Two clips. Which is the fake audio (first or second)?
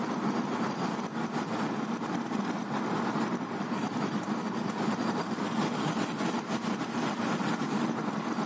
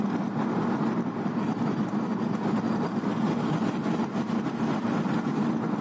first